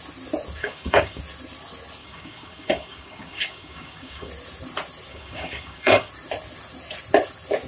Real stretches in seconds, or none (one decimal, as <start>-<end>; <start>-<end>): 0.0-0.6; 1.2-2.0; 4.3-5.1; 6.1-7.7